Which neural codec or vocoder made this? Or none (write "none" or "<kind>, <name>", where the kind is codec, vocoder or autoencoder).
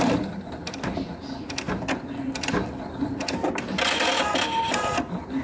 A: none